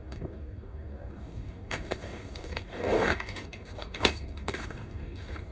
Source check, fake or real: fake